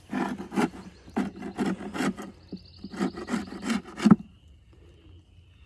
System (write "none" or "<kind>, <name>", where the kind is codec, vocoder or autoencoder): none